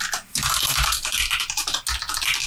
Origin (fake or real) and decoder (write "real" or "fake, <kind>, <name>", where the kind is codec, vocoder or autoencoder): real